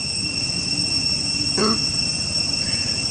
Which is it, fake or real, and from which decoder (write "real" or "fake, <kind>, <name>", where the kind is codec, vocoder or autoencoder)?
real